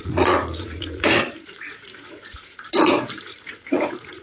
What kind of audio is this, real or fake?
fake